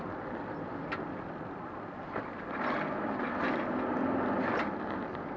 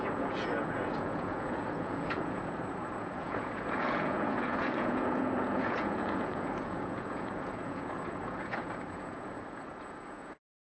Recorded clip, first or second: first